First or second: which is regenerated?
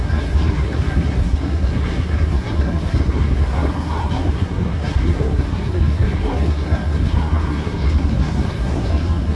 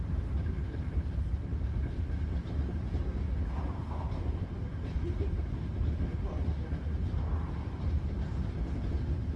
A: first